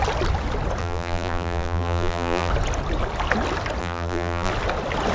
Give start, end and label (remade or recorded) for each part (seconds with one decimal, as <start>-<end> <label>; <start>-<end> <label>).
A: 0.0-0.8 recorded; 0.8-2.5 remade; 2.5-3.8 recorded; 3.8-4.5 remade; 4.5-5.1 recorded